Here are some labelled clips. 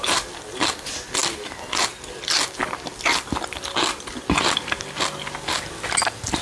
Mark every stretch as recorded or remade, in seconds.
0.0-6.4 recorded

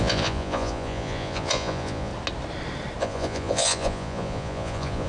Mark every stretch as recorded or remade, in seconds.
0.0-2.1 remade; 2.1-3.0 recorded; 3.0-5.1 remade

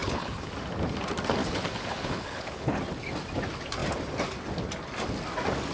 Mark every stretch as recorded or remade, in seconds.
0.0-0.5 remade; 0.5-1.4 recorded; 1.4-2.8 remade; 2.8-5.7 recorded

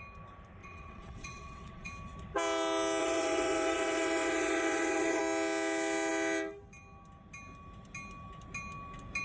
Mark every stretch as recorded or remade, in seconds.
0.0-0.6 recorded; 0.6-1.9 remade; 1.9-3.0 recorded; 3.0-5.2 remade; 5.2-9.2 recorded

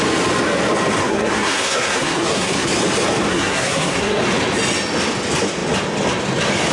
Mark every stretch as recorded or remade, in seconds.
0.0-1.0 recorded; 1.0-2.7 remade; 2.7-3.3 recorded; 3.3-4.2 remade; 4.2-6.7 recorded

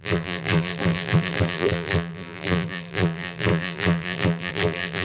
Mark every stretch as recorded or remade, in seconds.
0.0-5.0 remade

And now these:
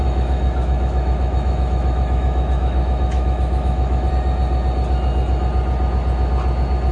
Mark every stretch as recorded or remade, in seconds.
0.0-4.1 remade; 4.1-6.9 recorded

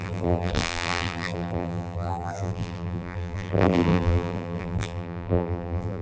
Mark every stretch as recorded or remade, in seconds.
0.0-6.0 remade